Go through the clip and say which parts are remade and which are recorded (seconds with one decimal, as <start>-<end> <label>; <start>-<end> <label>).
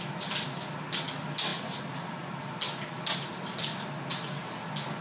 0.0-5.0 recorded